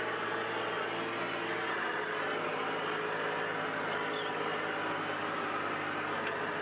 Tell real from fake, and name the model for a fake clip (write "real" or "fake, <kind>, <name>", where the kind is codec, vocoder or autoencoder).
real